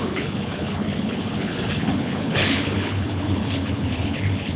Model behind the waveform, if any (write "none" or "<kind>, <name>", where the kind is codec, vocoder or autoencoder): codec, HILCodec